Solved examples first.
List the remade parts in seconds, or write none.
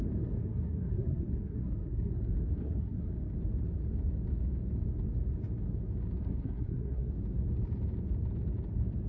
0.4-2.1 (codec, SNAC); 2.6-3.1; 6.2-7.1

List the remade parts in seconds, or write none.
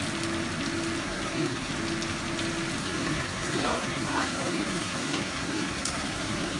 1.0-1.7 (codec, SNAC); 2.8-6.6